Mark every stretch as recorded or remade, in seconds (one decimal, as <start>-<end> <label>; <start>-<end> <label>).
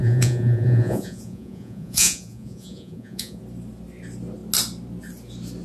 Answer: 0.0-3.4 remade; 3.4-5.6 recorded